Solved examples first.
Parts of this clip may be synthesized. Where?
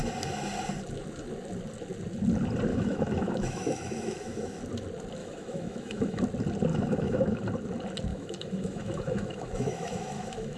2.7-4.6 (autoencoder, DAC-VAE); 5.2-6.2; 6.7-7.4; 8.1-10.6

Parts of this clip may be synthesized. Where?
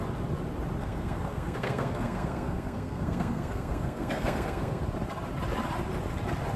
0.8-4.8 (codec, SNAC)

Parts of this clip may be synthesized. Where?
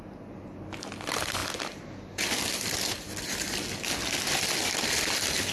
none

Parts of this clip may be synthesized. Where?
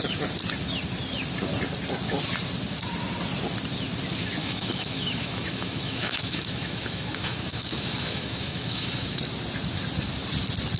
4.4-9.2 (autoencoder, DAC-VAE)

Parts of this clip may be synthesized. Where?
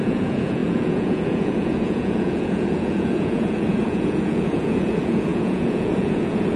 0.0-6.6 (vocoder, Vocos)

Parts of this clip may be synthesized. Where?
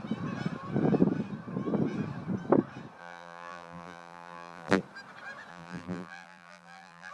3.0-4.8 (vocoder, BigVGAN v2); 5.5-7.1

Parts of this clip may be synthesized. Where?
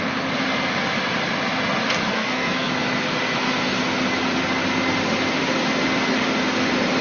2.1-2.7 (codec, SNAC)